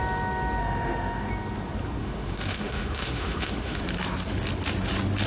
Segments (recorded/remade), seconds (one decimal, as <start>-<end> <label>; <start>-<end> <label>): 0.0-0.6 recorded; 0.6-1.3 remade; 1.3-2.0 recorded; 2.0-3.8 remade; 3.8-5.3 recorded